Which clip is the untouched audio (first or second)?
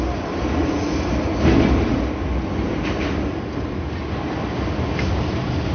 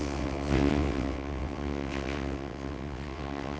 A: first